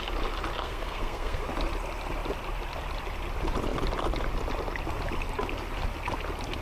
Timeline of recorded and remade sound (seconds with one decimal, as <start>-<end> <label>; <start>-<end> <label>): 0.0-0.6 recorded; 0.6-1.4 remade; 1.4-6.6 recorded